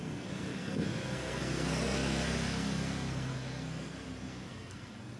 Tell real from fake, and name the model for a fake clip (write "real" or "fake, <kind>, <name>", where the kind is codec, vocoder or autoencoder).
fake, codec, SNAC